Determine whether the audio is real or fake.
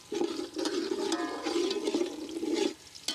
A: real